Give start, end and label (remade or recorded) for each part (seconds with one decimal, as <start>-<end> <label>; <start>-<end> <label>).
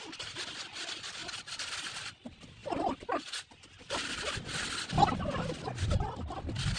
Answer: 0.0-6.8 recorded